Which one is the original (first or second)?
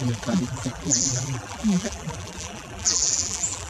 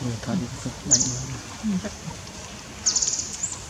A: second